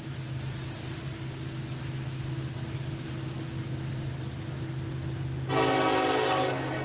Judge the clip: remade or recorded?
recorded